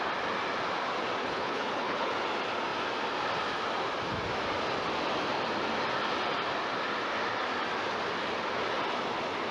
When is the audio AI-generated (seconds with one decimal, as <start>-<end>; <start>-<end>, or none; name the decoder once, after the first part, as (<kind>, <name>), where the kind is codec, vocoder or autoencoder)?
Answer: 1.2-2.1 (codec, HILCodec)